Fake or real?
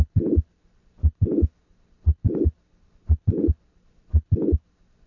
fake